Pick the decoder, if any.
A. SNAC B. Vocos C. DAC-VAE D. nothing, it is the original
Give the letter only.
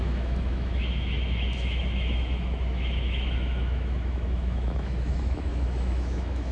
C